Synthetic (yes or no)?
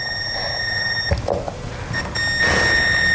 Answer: no